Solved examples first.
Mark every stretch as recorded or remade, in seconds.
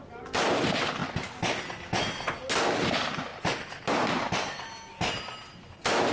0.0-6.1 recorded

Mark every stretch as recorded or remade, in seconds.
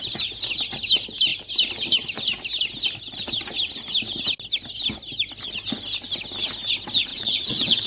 0.0-7.1 recorded; 7.1-7.9 remade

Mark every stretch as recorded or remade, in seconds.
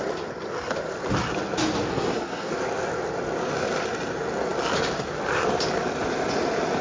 0.0-1.9 recorded; 1.9-2.5 remade; 2.5-6.8 recorded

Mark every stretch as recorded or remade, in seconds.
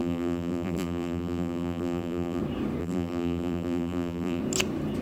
0.0-2.4 remade; 2.4-2.8 recorded; 2.8-4.4 remade; 4.4-5.0 recorded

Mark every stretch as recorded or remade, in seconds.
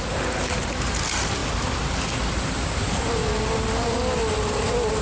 0.0-5.0 recorded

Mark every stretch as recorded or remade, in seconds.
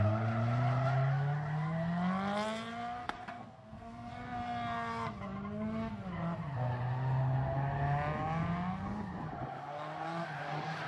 0.0-3.0 recorded; 3.0-4.1 remade; 4.1-10.9 recorded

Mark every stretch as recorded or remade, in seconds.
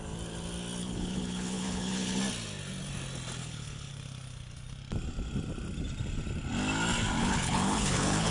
0.0-0.8 recorded; 0.8-2.2 remade; 2.2-3.4 recorded; 3.4-3.9 remade; 3.9-7.2 recorded; 7.2-8.3 remade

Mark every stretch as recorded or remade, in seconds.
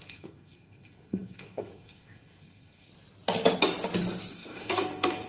0.0-2.9 remade; 2.9-4.3 recorded; 4.3-5.3 remade